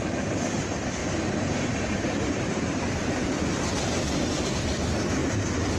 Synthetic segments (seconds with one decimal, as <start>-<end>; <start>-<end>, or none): 1.0-4.5; 5.2-5.8